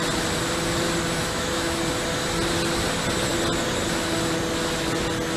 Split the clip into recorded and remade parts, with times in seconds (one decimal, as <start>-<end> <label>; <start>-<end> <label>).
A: 0.0-1.2 recorded; 1.2-1.8 remade; 1.8-5.4 recorded